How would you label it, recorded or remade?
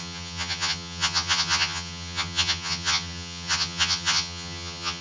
remade